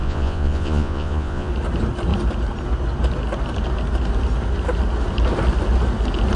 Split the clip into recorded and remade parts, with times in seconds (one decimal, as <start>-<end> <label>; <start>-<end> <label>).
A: 0.0-1.5 remade; 1.5-6.4 recorded